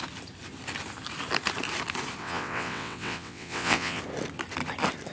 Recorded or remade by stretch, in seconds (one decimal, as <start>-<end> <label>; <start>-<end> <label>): 0.0-2.2 recorded; 2.2-4.0 remade; 4.0-5.1 recorded